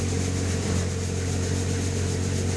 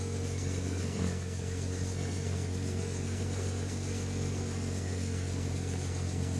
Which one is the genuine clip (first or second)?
first